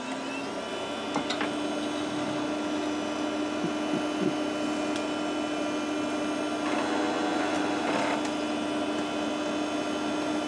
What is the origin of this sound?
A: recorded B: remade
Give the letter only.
A